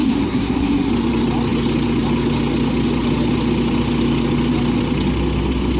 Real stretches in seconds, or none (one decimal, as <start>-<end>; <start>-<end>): 0.9-5.8